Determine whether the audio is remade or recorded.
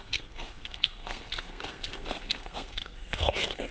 remade